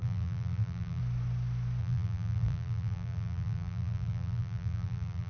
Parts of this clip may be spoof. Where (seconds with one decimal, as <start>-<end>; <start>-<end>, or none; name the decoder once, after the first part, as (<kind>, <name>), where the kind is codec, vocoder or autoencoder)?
0.0-1.0 (vocoder, BigVGAN v2); 1.8-5.3